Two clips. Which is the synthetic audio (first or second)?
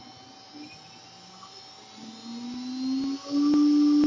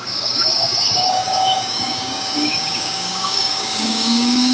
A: second